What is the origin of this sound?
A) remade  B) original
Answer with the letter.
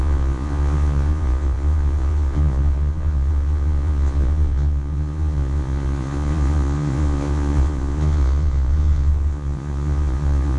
A